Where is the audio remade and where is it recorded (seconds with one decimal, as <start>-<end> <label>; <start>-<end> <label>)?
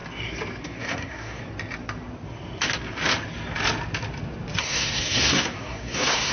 0.0-0.6 recorded; 0.6-1.4 remade; 1.4-4.6 recorded; 4.6-6.3 remade